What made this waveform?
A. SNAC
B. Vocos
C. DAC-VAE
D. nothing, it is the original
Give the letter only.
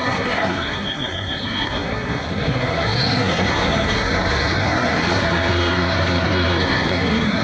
A